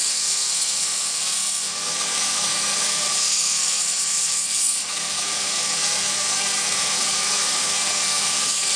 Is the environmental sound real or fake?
fake